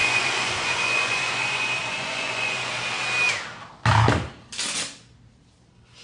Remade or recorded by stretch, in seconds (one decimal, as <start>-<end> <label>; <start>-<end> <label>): 0.0-2.7 remade; 2.7-6.0 recorded